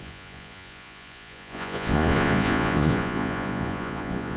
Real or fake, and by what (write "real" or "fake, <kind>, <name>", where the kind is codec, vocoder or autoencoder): fake, vocoder, Vocos